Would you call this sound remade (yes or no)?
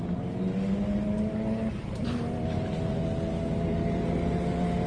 no